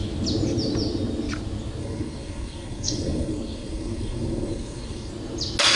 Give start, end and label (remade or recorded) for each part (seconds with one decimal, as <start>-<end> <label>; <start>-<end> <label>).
0.0-1.8 recorded; 1.8-5.1 remade; 5.1-5.8 recorded